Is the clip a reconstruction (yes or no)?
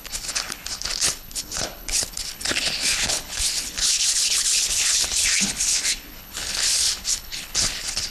yes